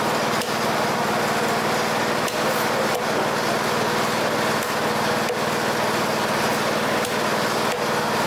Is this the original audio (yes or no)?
yes